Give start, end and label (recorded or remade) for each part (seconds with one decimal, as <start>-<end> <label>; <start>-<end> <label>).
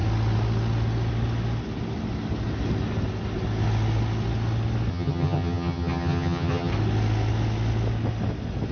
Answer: 0.0-4.9 recorded; 4.9-6.7 remade; 6.7-8.7 recorded